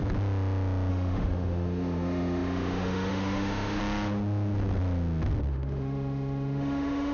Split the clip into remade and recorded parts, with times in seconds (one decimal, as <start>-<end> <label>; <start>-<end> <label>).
0.0-0.9 recorded; 0.9-3.8 remade; 3.8-5.5 recorded; 5.5-7.1 remade